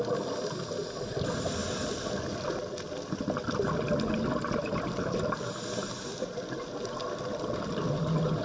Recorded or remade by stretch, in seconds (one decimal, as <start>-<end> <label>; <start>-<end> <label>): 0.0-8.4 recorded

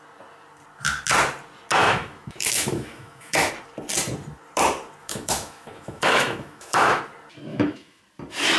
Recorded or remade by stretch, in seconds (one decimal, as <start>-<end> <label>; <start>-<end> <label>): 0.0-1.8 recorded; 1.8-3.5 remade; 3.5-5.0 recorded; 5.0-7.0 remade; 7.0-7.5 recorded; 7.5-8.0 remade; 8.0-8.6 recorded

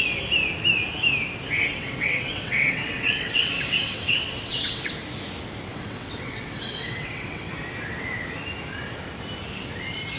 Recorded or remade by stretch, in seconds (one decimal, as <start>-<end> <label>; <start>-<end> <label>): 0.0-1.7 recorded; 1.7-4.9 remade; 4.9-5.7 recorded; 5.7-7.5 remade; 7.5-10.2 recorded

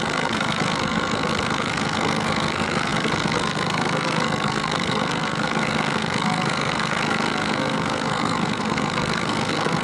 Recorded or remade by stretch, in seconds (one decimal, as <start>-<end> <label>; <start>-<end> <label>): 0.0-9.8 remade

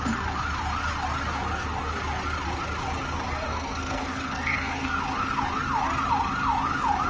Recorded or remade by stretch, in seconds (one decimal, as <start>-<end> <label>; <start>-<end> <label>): 0.0-3.5 recorded; 3.5-5.0 remade; 5.0-7.1 recorded

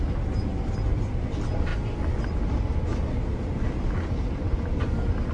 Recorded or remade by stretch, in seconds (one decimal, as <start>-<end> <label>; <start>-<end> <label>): 0.0-5.3 recorded

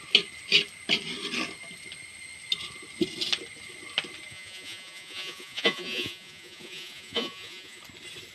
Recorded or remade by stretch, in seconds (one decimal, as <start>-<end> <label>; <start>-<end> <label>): 0.0-4.3 recorded; 4.3-7.8 remade; 7.8-8.3 recorded